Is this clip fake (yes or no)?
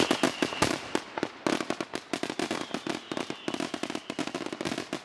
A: no